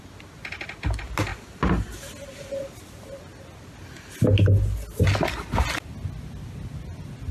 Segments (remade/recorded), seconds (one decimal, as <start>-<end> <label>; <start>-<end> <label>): 0.0-7.3 recorded